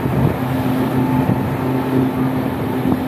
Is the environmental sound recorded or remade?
recorded